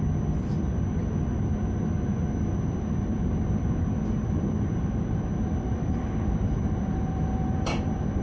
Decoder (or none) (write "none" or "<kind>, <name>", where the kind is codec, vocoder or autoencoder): vocoder, BigVGAN v2